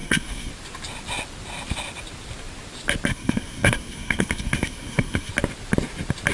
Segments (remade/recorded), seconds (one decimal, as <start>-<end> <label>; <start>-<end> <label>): 0.0-0.5 remade; 0.5-3.1 recorded; 3.1-5.3 remade; 5.3-6.3 recorded